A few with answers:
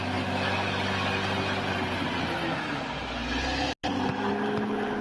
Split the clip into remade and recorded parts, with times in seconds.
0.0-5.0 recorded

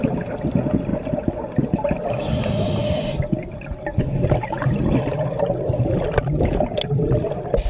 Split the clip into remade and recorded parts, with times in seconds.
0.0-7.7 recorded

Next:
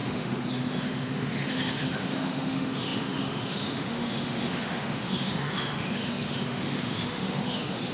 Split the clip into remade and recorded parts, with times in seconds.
0.0-7.9 remade